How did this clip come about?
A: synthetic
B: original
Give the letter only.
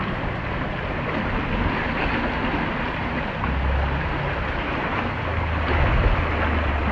B